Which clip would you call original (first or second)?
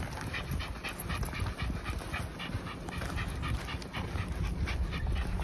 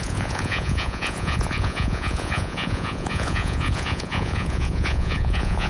first